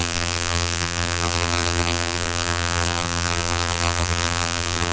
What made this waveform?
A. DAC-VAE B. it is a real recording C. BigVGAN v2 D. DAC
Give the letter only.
C